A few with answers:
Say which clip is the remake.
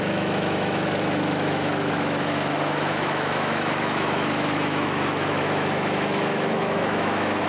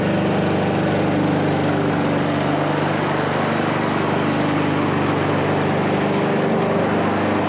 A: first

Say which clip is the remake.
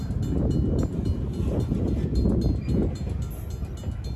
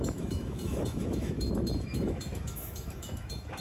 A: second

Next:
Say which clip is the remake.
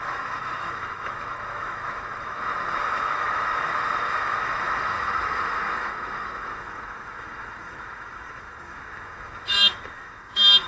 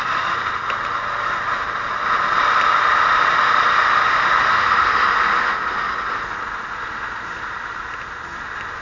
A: first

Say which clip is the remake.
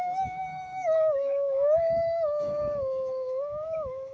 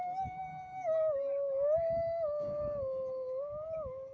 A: first